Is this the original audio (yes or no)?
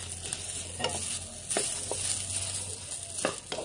yes